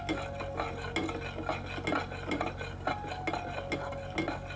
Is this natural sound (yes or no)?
yes